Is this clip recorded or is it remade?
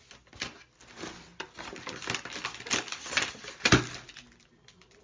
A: recorded